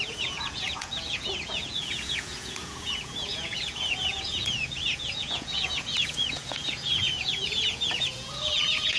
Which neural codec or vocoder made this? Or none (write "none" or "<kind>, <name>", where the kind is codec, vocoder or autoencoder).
vocoder, Vocos